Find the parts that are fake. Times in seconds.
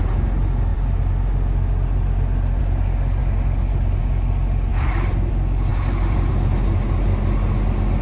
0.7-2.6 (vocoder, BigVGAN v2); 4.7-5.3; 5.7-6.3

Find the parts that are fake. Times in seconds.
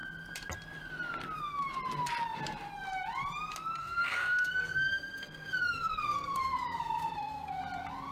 3.8-7.6 (codec, SNAC)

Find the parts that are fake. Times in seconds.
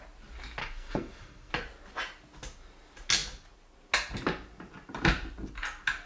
0.6-1.5 (codec, SNAC)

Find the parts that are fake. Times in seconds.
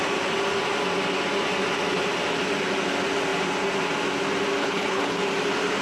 4.6-5.2 (codec, HILCodec)